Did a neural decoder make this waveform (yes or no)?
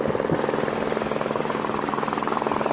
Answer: no